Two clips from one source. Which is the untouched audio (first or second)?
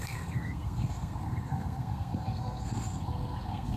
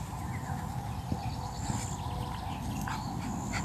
second